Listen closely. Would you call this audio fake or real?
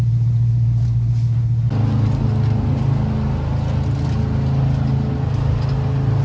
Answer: real